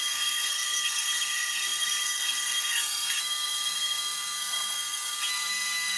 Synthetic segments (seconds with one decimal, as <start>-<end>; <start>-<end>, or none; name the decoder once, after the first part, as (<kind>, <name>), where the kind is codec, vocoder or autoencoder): 0.0-6.0 (codec, SNAC)